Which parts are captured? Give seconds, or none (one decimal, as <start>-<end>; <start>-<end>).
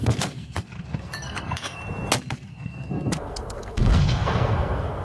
1.8-2.3